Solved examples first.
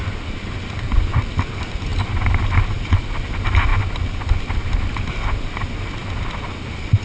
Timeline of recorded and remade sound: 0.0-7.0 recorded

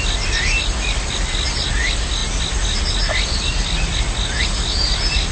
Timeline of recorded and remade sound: 0.0-5.3 recorded

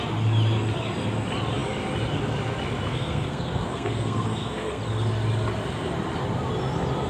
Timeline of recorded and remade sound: 0.0-2.9 recorded; 2.9-4.8 remade; 4.8-7.1 recorded

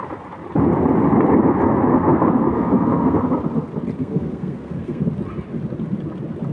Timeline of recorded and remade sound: 0.0-1.9 recorded; 1.9-3.2 remade; 3.2-4.0 recorded; 4.0-5.0 remade; 5.0-6.5 recorded

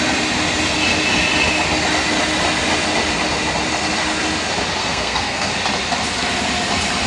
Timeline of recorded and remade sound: 0.0-4.8 recorded; 4.8-5.5 remade; 5.5-7.1 recorded